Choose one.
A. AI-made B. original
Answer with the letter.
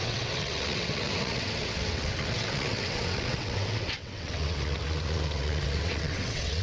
A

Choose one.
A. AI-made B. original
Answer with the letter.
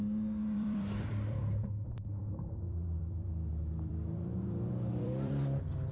A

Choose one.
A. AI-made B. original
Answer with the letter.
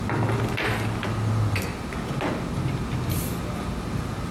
B